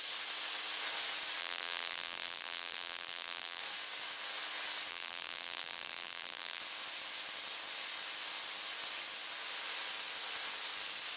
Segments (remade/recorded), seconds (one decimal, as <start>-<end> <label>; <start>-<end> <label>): 0.0-1.4 recorded; 1.4-3.6 remade; 3.6-4.9 recorded; 4.9-6.6 remade; 6.6-11.2 recorded